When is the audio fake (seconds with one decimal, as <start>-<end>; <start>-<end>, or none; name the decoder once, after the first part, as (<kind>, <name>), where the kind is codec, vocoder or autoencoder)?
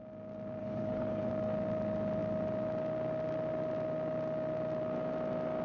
0.6-1.3 (codec, HILCodec)